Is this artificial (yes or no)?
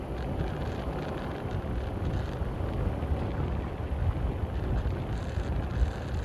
no